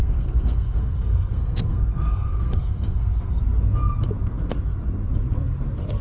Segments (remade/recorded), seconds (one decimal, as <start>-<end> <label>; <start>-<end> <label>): 0.0-3.4 remade; 3.4-6.0 recorded